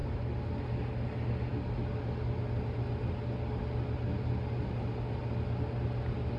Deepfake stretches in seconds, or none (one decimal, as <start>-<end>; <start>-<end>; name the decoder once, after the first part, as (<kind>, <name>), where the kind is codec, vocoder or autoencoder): none